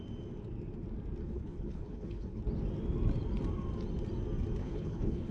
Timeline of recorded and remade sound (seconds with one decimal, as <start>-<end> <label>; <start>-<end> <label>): 0.0-1.2 recorded; 1.2-2.4 remade; 2.4-4.6 recorded; 4.6-5.3 remade